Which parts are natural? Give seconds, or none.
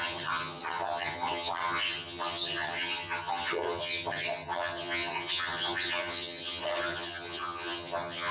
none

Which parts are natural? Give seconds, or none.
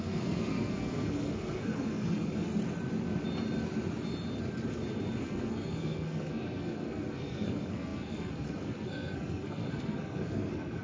2.5-5.2